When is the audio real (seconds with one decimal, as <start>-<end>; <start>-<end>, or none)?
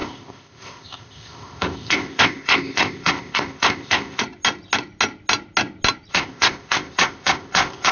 4.2-6.1